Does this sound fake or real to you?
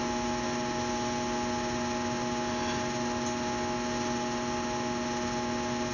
real